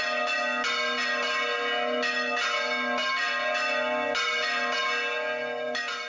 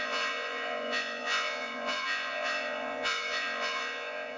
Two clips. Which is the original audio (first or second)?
first